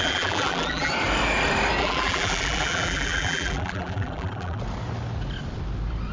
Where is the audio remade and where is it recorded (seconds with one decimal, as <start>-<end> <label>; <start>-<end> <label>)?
0.0-0.9 remade; 0.9-1.8 recorded; 1.8-4.6 remade; 4.6-6.1 recorded